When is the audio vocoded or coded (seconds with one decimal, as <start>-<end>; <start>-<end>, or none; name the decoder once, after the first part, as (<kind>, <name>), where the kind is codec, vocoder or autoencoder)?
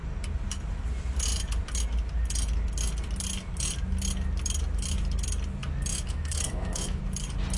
5.9-7.0 (autoencoder, DAC-VAE)